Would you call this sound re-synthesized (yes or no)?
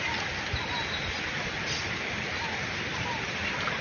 no